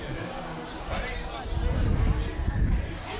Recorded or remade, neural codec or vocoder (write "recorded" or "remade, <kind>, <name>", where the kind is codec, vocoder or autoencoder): recorded